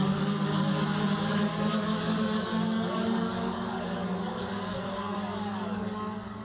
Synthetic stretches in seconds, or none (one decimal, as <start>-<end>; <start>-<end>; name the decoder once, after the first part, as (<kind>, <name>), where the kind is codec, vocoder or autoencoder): 0.0-0.7 (codec, DAC); 1.3-6.4